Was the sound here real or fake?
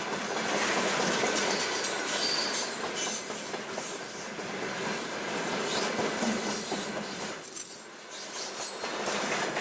real